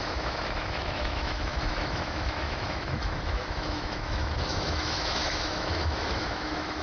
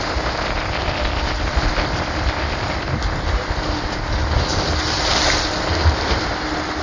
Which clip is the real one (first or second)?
second